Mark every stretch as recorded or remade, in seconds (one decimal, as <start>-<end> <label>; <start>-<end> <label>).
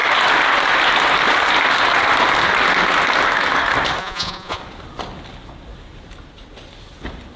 0.0-4.0 recorded; 4.0-4.6 remade; 4.6-7.4 recorded